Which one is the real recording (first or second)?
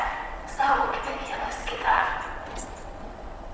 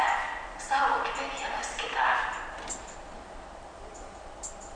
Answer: second